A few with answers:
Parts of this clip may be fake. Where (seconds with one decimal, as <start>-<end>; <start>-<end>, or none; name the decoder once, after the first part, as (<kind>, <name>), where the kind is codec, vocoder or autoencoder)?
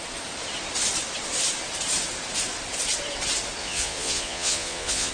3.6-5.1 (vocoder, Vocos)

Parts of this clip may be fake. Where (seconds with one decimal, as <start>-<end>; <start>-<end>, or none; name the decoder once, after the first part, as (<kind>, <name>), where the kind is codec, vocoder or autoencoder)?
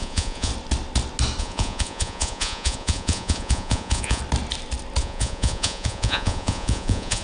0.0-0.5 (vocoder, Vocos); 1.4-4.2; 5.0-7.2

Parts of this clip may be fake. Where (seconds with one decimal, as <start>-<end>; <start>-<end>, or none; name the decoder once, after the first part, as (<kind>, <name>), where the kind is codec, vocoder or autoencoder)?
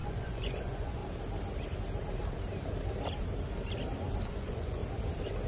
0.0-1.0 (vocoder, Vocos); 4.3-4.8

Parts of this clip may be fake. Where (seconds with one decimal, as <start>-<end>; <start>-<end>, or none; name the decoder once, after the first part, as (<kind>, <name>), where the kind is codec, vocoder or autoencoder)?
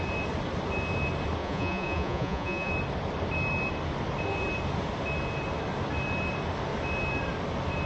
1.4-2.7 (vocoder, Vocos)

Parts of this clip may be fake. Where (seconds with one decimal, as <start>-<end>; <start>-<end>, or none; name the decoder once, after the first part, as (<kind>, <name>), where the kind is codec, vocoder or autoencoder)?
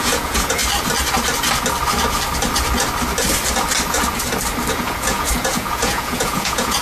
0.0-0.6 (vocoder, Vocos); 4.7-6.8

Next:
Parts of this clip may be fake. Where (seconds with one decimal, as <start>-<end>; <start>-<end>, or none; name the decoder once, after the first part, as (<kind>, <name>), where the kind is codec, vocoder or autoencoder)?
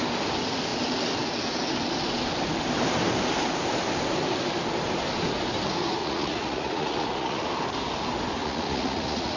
6.0-7.5 (vocoder, Vocos); 8.4-9.4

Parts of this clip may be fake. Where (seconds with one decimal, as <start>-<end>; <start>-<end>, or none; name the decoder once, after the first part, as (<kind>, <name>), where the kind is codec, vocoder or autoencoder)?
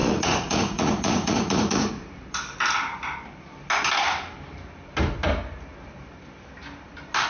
0.0-1.9 (vocoder, Vocos)